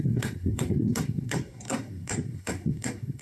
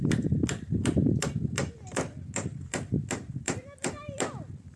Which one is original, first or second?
second